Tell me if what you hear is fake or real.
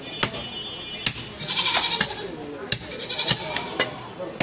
real